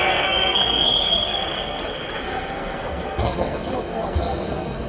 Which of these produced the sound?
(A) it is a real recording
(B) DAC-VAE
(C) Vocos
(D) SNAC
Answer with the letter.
D